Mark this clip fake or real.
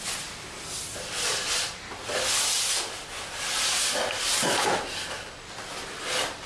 real